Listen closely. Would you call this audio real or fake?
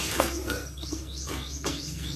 fake